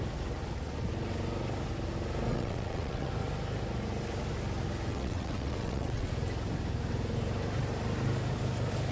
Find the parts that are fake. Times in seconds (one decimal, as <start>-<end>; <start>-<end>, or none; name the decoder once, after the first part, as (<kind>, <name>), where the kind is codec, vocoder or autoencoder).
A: 2.3-3.1 (vocoder, WaveNeXt); 4.9-6.1